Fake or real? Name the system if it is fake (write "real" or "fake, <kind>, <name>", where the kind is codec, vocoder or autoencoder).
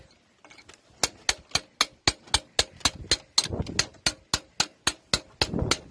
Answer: real